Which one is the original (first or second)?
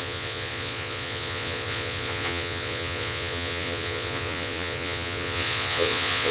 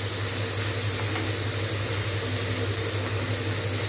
second